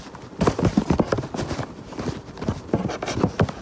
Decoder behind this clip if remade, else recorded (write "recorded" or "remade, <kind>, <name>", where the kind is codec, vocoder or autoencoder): remade, vocoder, BigVGAN v2